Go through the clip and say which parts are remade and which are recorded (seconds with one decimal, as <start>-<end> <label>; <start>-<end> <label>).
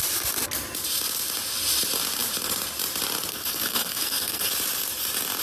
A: 0.0-3.3 recorded; 3.3-4.5 remade; 4.5-5.4 recorded